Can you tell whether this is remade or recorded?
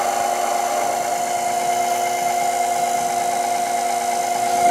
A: recorded